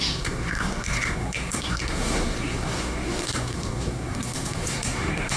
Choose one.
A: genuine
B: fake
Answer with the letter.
B